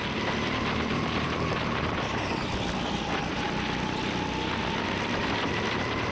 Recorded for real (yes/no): no